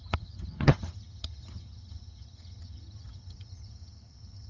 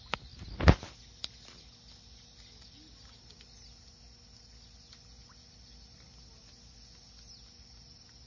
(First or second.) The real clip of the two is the second